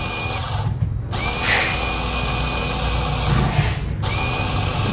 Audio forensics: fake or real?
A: real